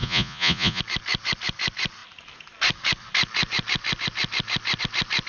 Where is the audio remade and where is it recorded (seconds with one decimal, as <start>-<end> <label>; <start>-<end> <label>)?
0.0-0.8 remade; 0.8-5.3 recorded